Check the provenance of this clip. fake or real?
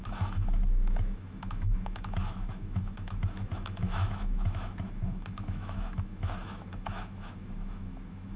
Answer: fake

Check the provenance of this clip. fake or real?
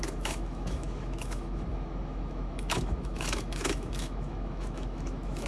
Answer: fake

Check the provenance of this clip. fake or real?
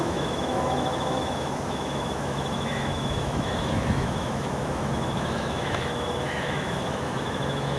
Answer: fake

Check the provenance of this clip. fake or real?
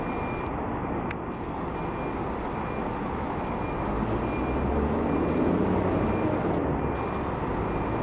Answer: real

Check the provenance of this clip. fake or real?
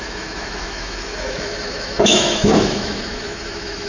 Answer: fake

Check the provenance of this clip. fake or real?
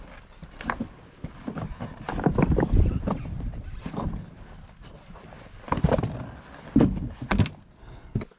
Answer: real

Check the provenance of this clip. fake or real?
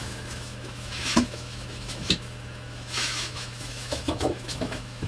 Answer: fake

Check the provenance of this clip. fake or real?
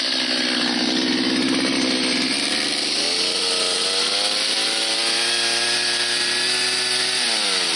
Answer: real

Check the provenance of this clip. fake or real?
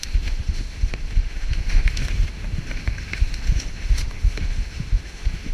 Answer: fake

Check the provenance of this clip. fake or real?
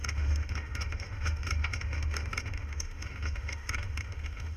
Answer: fake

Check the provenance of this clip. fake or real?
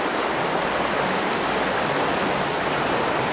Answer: real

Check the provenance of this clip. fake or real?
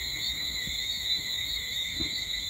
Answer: fake